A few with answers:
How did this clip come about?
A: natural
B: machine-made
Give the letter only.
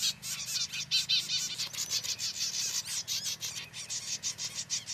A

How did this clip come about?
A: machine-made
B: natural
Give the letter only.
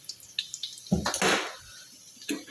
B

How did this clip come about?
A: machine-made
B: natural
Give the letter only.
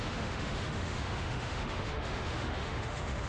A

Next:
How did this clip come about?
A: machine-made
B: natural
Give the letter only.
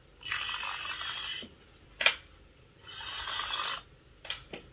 B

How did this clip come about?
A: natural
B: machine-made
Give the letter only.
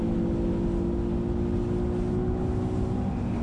A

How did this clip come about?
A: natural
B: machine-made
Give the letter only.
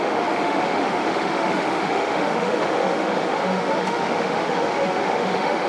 B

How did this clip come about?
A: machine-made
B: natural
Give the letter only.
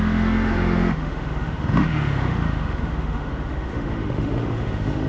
A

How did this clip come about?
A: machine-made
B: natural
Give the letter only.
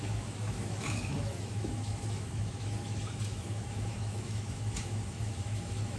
A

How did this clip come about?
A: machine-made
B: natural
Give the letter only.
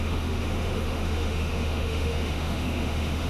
A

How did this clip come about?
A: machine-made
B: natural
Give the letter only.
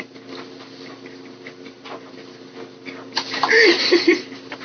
B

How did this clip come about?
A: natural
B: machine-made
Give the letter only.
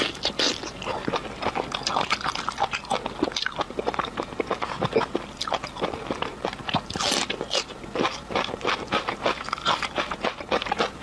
A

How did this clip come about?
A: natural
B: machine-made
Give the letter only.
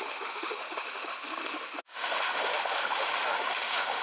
B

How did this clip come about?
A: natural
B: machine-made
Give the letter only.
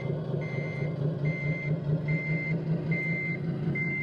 A